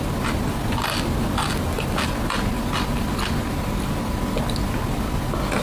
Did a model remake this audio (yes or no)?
no